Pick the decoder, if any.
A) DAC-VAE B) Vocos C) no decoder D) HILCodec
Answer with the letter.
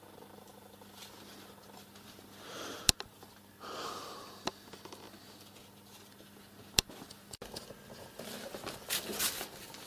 C